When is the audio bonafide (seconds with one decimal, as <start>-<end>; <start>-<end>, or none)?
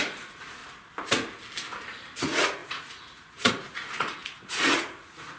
0.6-2.2